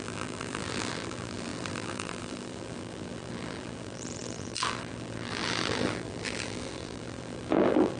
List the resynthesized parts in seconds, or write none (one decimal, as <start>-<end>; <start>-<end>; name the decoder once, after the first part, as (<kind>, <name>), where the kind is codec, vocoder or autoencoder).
0.0-8.0 (vocoder, BigVGAN v2)